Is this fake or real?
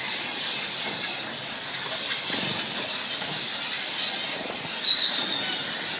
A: real